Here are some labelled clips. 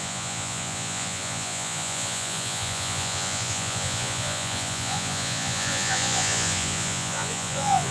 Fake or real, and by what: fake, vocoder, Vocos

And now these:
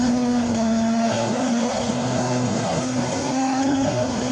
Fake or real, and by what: fake, codec, SNAC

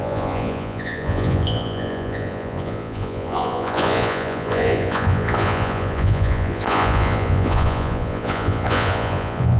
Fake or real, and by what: fake, vocoder, Vocos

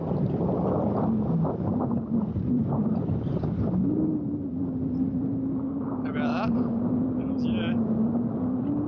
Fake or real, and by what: real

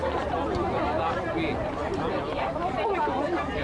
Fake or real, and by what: real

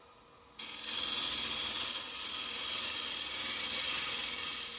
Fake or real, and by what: real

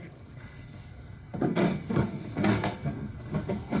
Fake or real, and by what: fake, codec, SNAC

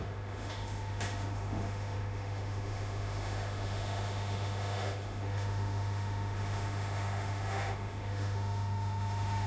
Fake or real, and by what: fake, autoencoder, DAC-VAE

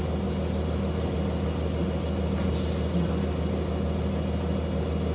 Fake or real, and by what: real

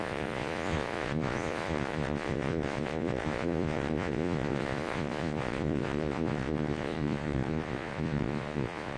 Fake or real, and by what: fake, vocoder, Vocos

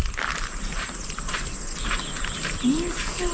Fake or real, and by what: real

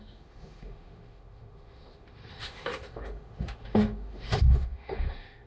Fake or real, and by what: fake, autoencoder, DAC-VAE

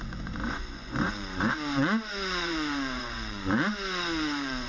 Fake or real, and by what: fake, vocoder, Vocos